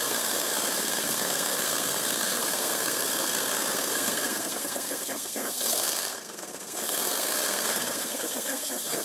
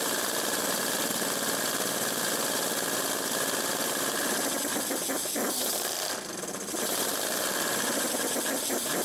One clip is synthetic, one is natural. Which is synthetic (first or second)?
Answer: first